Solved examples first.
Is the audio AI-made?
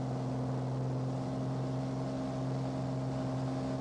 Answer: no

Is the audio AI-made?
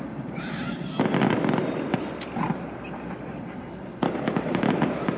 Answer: no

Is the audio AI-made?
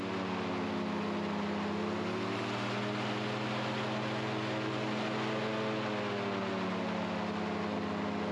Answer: no